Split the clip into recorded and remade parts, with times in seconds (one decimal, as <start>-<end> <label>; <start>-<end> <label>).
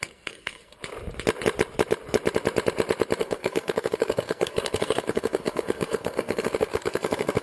0.0-0.8 remade; 0.8-3.2 recorded; 3.2-7.4 remade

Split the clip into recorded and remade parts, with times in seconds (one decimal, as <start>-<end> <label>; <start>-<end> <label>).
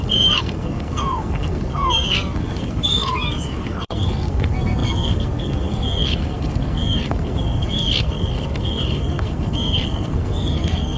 0.0-11.0 remade